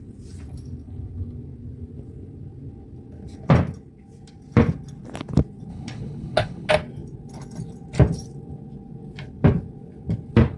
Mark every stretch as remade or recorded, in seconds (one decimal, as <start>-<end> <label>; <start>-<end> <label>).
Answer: 0.0-5.7 recorded; 5.7-6.7 remade; 6.7-10.6 recorded